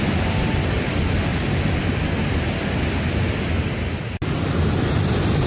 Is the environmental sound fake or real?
real